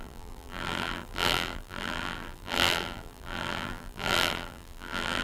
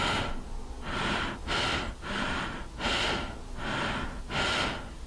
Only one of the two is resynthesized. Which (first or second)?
first